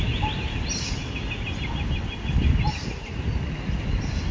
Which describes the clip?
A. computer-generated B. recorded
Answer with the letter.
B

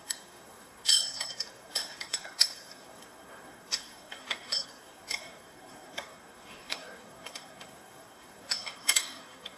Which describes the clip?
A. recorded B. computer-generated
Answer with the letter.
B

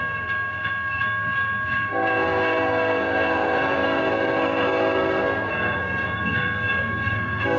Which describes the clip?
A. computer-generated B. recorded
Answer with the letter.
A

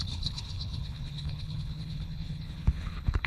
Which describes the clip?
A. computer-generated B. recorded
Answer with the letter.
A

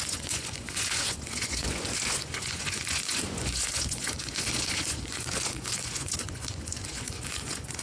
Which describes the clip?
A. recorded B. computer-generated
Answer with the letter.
B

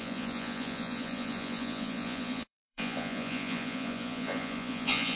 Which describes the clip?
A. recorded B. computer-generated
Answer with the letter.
B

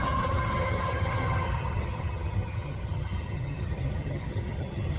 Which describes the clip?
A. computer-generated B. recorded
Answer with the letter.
A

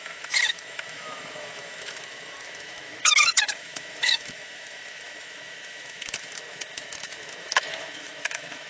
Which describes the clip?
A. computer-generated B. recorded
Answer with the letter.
A